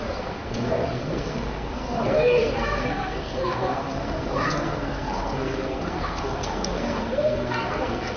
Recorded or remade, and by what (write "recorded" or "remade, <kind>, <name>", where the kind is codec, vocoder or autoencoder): remade, codec, SNAC